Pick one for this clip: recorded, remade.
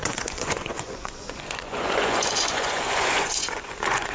remade